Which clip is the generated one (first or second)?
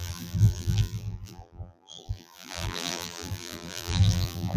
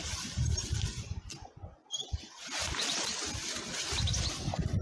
first